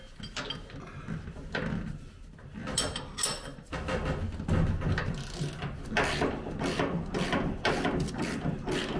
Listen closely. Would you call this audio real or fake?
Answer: real